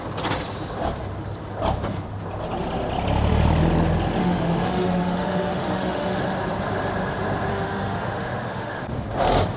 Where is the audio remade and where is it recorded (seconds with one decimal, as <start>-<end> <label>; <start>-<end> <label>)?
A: 0.0-4.2 recorded; 4.2-6.2 remade; 6.2-7.5 recorded; 7.5-8.8 remade; 8.8-9.6 recorded